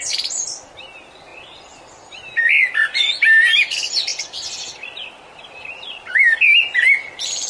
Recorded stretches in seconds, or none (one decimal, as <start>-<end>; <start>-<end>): 0.0-7.5